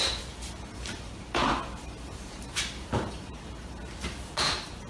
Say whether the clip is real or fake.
real